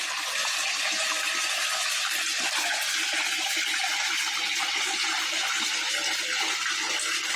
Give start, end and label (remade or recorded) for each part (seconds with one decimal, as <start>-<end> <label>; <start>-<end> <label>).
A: 0.0-0.4 recorded; 0.4-4.8 remade; 4.8-7.4 recorded